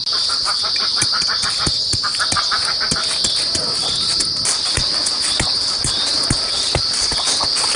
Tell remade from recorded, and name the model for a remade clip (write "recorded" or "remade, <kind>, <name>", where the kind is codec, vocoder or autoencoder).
recorded